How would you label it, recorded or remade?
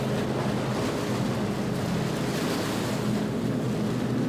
recorded